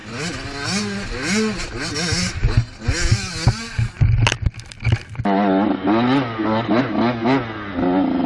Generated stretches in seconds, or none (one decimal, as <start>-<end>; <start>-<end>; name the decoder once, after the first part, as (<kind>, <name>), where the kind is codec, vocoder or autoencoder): none